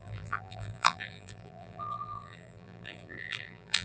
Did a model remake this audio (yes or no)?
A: yes